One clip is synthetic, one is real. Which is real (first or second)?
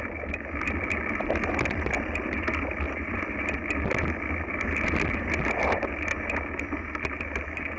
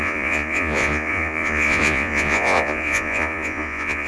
first